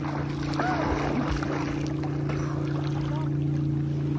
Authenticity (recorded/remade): recorded